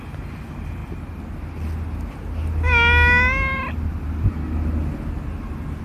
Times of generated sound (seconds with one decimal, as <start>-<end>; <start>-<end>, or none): none